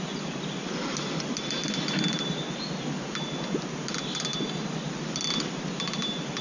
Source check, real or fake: real